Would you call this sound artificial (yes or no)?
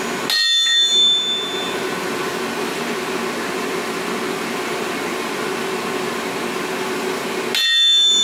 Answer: no